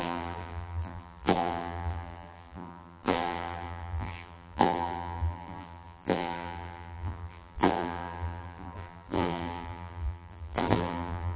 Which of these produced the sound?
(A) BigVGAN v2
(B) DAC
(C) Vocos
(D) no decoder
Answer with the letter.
A